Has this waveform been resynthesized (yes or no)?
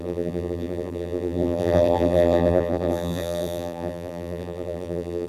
yes